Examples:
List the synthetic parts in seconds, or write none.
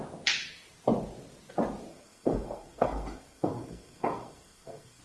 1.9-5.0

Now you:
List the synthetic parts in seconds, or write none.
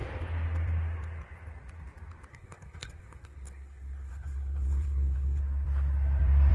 2.3-5.4